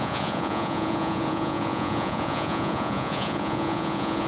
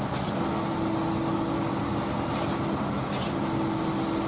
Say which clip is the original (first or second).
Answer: second